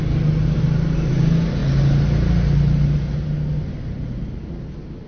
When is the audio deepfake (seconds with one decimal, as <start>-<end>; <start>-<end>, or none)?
none